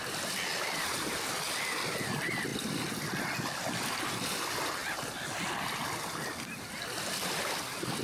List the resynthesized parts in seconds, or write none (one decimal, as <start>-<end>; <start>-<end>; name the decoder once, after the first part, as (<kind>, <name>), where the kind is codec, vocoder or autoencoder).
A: none